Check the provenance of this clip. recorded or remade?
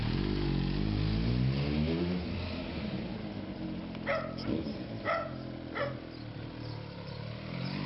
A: recorded